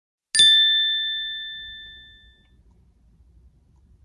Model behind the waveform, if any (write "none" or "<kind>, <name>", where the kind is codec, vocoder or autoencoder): none